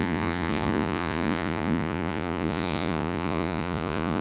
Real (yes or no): no